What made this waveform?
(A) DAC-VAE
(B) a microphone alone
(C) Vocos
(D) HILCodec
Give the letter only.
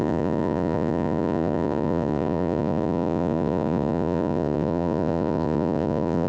C